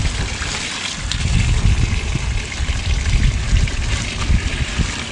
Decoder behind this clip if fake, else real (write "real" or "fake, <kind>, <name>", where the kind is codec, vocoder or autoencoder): real